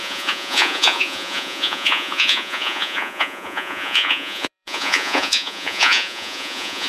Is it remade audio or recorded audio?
remade